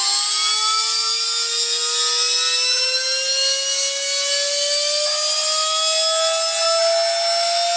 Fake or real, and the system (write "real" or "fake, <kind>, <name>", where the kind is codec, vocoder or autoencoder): real